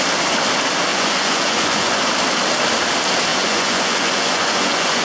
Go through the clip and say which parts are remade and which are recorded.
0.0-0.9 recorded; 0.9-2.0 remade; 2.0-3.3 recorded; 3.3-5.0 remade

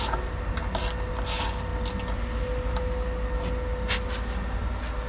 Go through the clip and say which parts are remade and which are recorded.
0.0-5.1 recorded

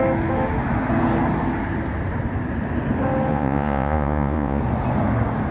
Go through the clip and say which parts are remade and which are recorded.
0.0-3.3 recorded; 3.3-4.6 remade; 4.6-5.5 recorded

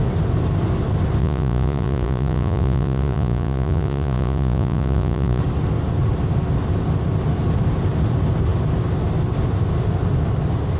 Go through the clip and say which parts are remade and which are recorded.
0.0-1.2 recorded; 1.2-5.4 remade; 5.4-10.8 recorded

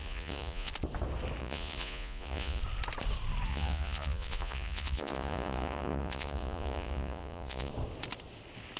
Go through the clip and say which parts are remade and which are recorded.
0.0-0.7 remade; 0.7-1.4 recorded; 1.4-2.6 remade; 2.6-3.5 recorded; 3.5-7.7 remade; 7.7-8.8 recorded